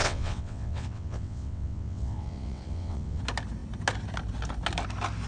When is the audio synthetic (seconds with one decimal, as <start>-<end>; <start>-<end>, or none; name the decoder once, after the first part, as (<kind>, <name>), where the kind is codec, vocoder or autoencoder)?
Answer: 0.0-3.2 (vocoder, WaveNeXt)